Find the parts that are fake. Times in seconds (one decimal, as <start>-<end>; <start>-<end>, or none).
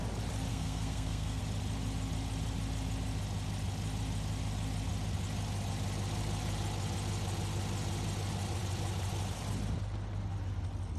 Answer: 0.5-1.4